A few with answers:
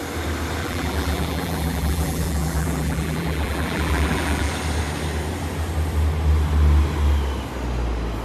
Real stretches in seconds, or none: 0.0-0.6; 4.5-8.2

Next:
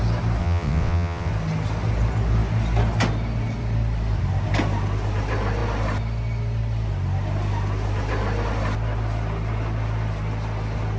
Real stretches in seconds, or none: 0.0-0.4; 1.3-11.0